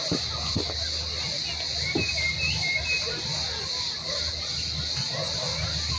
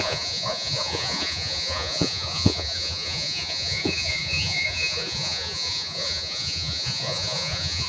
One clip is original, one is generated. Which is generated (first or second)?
second